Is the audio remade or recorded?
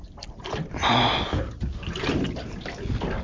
recorded